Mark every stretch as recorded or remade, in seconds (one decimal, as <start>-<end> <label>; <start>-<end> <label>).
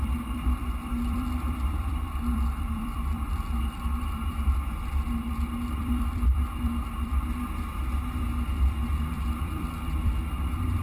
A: 0.0-10.8 remade